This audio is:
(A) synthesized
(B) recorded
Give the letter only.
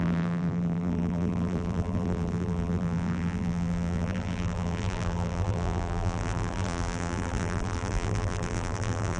A